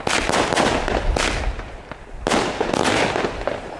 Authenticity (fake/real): real